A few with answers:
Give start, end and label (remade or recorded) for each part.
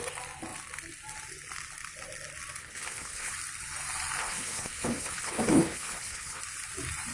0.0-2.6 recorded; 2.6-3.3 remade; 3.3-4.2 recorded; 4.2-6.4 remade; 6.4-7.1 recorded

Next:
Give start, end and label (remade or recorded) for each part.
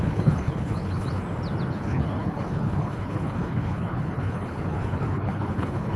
0.0-1.2 remade; 1.2-1.7 recorded; 1.7-6.0 remade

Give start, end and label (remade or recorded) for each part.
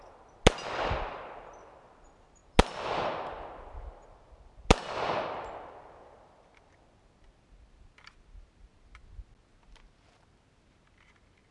0.0-11.5 recorded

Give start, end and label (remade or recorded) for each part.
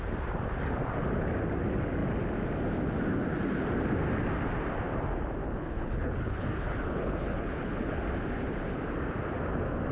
0.0-5.4 recorded; 5.4-8.0 remade; 8.0-9.9 recorded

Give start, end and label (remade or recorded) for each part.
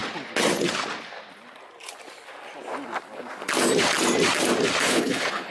0.0-4.8 recorded; 4.8-5.5 remade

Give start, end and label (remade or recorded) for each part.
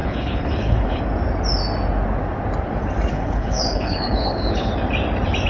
0.0-1.0 remade; 1.0-3.1 recorded; 3.1-4.7 remade; 4.7-5.5 recorded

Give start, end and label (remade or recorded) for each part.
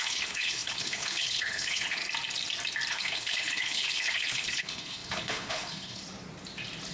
0.0-2.0 remade; 2.0-2.9 recorded; 2.9-6.0 remade; 6.0-6.9 recorded